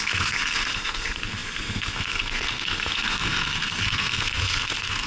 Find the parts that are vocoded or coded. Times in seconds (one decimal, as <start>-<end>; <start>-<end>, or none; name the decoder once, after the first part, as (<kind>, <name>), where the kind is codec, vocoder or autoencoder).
0.0-5.1 (codec, SNAC)